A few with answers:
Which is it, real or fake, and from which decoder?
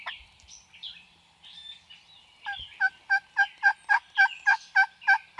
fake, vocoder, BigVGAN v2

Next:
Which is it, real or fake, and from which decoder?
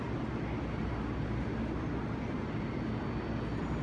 real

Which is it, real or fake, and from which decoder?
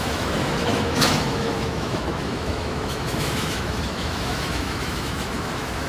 fake, autoencoder, DAC-VAE